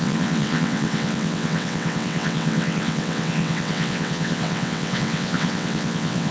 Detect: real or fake fake